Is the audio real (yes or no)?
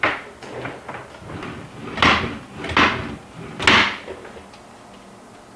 yes